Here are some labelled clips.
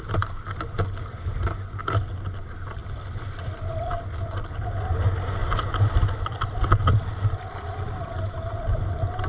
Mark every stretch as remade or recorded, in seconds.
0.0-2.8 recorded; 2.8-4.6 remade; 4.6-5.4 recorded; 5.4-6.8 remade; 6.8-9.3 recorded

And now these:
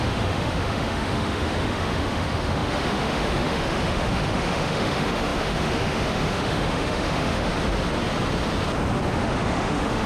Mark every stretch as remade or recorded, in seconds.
0.0-7.5 remade; 7.5-9.1 recorded; 9.1-10.1 remade

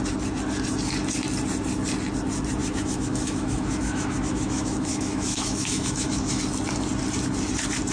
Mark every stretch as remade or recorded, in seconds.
0.0-2.6 recorded; 2.6-6.4 remade; 6.4-7.9 recorded

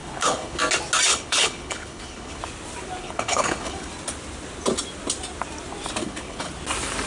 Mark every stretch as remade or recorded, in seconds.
0.0-0.6 remade; 0.6-1.1 recorded; 1.1-2.4 remade; 2.4-3.0 recorded; 3.0-3.9 remade; 3.9-6.0 recorded; 6.0-6.5 remade; 6.5-7.1 recorded

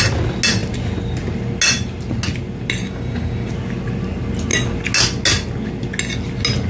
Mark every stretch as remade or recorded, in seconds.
0.0-2.8 recorded; 2.8-3.5 remade; 3.5-6.7 recorded